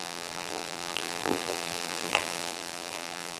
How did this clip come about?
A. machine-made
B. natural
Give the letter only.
A